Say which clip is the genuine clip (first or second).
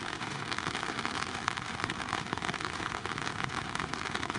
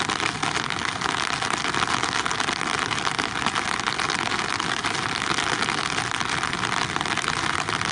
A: second